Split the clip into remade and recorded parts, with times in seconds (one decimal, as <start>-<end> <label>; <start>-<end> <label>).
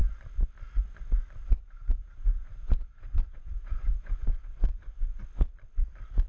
0.0-1.4 recorded; 1.4-5.2 remade; 5.2-6.3 recorded